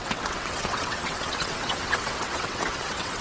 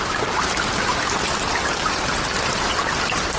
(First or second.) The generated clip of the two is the first